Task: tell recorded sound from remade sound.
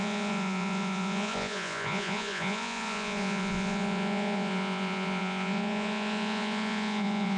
remade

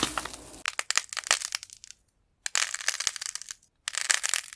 recorded